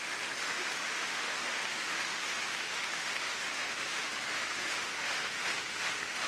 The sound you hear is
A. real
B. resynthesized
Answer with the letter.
B